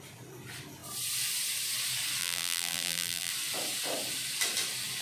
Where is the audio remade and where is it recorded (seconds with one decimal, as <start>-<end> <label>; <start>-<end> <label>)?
0.0-2.2 recorded; 2.2-3.3 remade; 3.3-5.0 recorded